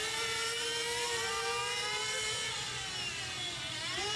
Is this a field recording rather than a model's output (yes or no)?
yes